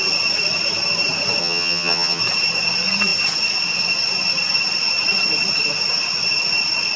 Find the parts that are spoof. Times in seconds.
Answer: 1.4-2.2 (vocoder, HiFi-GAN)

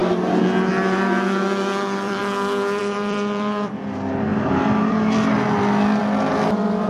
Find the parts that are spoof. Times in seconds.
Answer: 0.7-2.2 (vocoder, BigVGAN v2); 2.8-6.9

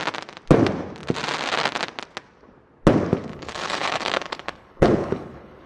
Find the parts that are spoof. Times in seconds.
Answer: 3.3-5.7 (codec, HILCodec)

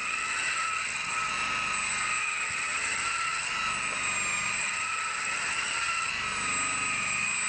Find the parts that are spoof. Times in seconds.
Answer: 0.0-1.3 (vocoder, HiFi-GAN); 2.2-3.5; 4.6-6.1